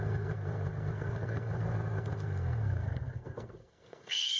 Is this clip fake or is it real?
fake